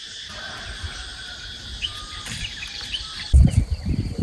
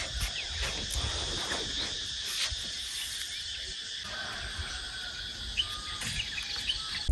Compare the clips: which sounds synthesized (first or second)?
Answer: first